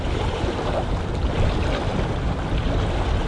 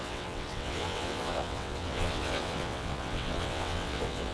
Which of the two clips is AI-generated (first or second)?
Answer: second